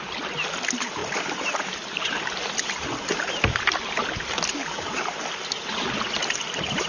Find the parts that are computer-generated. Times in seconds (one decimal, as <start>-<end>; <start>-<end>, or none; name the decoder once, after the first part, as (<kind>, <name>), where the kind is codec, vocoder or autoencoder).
1.0-2.2 (vocoder, BigVGAN v2); 4.6-5.2